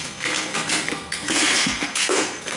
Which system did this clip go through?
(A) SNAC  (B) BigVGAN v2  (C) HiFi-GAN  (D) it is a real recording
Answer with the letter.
A